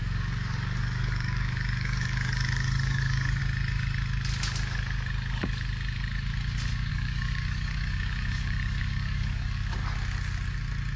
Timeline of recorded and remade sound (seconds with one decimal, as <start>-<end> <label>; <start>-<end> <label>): 0.0-3.4 remade; 3.4-6.9 recorded; 6.9-9.8 remade; 9.8-11.0 recorded